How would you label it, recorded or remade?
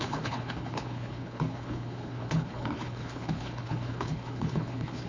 remade